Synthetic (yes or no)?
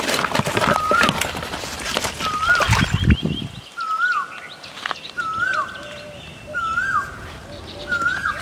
no